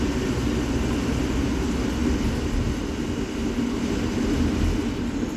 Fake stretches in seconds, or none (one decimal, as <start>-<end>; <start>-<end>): none